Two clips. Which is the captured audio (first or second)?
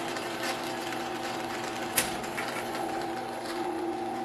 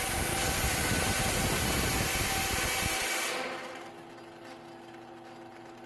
second